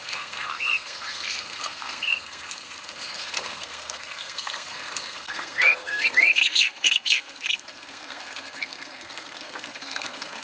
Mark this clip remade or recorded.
remade